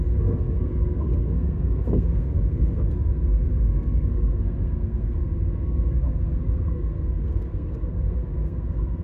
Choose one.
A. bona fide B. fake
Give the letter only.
B